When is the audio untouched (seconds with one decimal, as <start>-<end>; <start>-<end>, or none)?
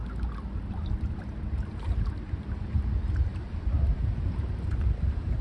0.0-0.7